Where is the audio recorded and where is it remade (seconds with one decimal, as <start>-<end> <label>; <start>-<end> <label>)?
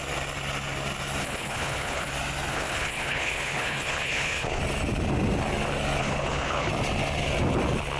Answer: 0.0-1.2 recorded; 1.2-2.1 remade; 2.1-2.5 recorded; 2.5-4.6 remade; 4.6-6.0 recorded; 6.0-6.7 remade; 6.7-8.0 recorded